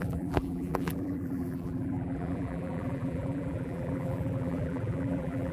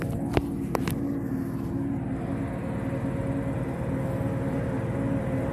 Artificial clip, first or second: first